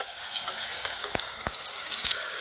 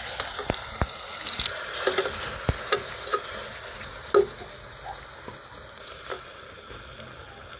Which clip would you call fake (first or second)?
first